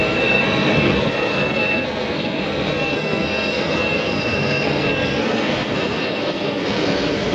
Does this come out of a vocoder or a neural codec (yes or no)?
yes